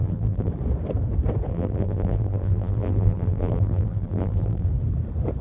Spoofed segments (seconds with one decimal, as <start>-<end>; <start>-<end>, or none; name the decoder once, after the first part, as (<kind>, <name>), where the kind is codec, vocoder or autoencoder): 0.0-0.5 (vocoder, BigVGAN v2); 1.5-4.7